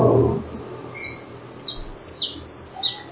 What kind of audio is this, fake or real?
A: real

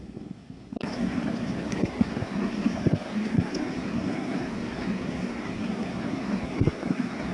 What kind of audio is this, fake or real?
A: fake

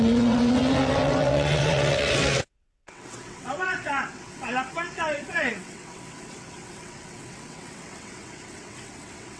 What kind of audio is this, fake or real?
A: fake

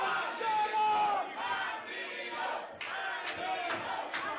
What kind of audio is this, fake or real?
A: real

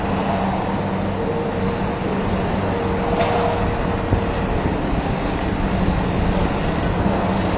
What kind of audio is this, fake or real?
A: real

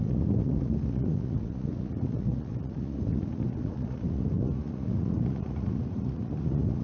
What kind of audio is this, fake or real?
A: fake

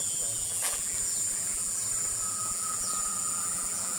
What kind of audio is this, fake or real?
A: fake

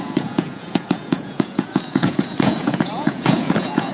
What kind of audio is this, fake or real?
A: fake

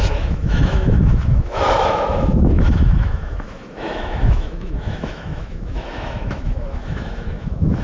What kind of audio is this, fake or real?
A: fake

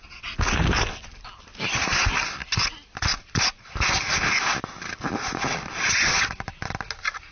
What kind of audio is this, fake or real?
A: real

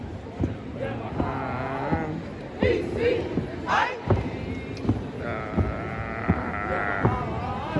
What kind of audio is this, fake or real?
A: real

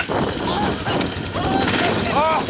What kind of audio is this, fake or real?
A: real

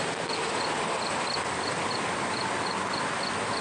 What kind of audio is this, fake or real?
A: real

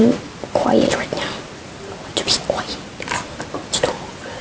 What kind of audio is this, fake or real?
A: real